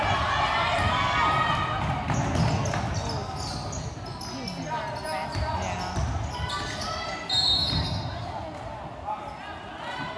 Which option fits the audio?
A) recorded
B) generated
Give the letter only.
A